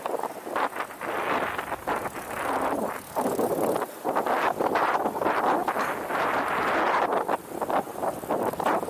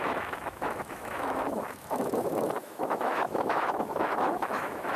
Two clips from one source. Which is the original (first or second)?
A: first